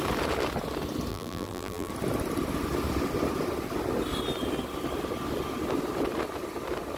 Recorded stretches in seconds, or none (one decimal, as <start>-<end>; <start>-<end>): 0.0-1.1; 1.9-7.0